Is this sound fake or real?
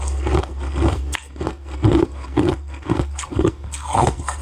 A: fake